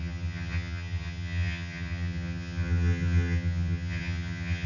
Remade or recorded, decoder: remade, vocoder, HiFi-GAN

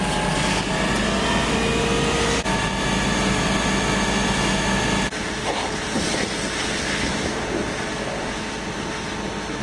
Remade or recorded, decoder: recorded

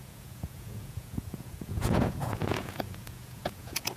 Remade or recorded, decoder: remade, vocoder, Vocos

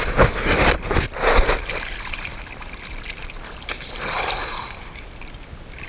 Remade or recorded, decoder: recorded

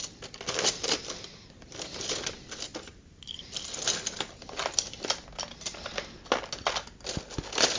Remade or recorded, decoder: recorded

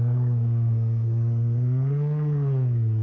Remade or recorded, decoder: remade, codec, SNAC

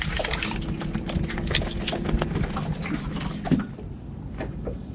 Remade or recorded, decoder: recorded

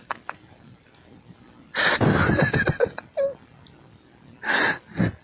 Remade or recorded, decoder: recorded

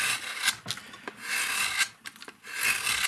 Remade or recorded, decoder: recorded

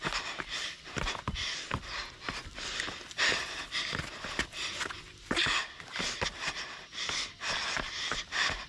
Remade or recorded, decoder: recorded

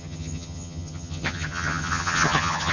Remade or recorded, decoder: remade, vocoder, HiFi-GAN